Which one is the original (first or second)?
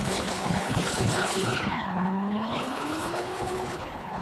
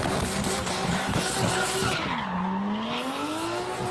second